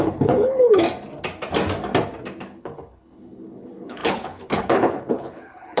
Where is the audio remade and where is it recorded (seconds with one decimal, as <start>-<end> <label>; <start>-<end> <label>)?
0.0-0.8 remade; 0.8-2.4 recorded; 2.4-5.8 remade